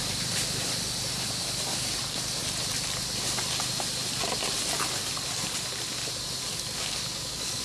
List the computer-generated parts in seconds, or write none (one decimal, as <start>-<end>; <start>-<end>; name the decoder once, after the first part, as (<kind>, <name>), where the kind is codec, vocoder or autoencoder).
6.5-7.6 (codec, DAC)